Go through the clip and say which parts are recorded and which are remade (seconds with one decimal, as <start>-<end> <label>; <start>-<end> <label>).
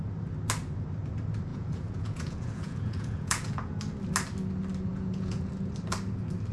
0.0-1.5 recorded; 1.5-3.8 remade; 3.8-4.9 recorded; 4.9-5.5 remade; 5.5-6.5 recorded